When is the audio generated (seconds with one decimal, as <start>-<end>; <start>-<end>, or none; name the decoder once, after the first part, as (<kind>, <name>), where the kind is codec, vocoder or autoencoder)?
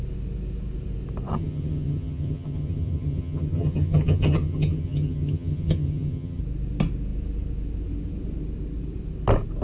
1.3-6.4 (vocoder, HiFi-GAN)